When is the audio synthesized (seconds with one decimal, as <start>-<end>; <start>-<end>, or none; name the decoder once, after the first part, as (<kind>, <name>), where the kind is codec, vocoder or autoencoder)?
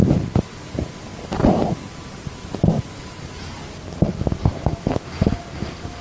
4.5-5.1 (autoencoder, DAC-VAE)